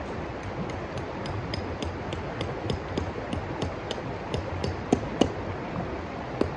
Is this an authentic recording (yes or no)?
yes